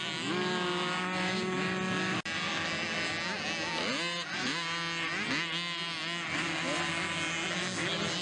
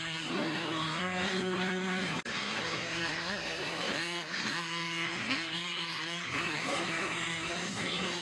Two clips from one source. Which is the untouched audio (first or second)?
first